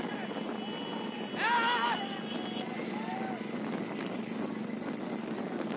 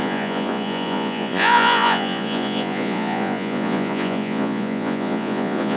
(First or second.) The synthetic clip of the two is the second